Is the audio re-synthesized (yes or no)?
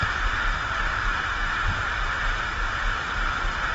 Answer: no